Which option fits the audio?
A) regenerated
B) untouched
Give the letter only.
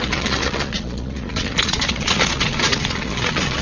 A